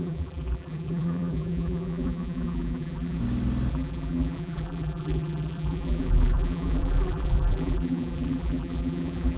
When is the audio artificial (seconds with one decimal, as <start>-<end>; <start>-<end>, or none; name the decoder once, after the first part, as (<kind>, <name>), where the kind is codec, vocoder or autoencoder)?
0.0-3.2 (vocoder, BigVGAN v2); 3.7-9.4